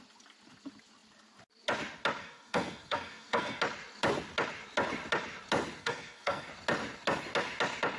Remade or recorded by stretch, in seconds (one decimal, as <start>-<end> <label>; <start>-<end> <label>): 0.0-2.2 recorded; 2.2-3.6 remade; 3.6-5.8 recorded; 5.8-6.5 remade; 6.5-8.0 recorded